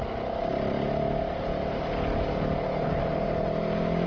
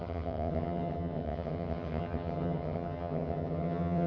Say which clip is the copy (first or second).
second